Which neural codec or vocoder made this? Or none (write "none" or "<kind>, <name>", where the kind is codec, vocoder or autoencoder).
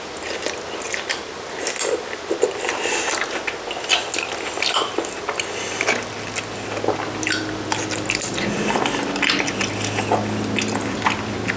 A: none